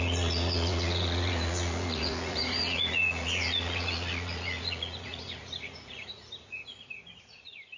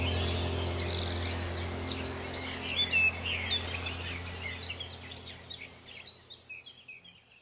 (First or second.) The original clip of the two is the second